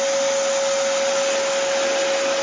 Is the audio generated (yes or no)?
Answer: no